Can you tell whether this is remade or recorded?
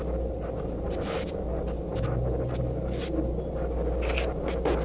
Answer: recorded